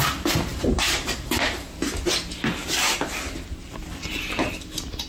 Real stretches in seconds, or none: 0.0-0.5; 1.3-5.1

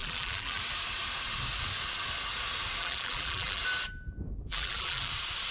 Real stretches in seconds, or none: 0.6-2.8; 3.6-4.5; 5.1-5.5

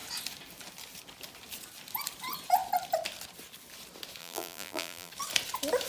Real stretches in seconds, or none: 0.0-4.2; 5.1-5.9

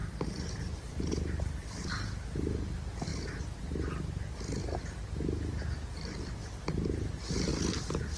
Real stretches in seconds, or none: 0.0-8.2

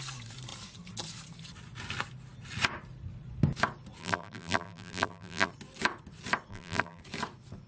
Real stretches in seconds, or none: 0.0-4.0; 5.5-6.5; 7.0-7.7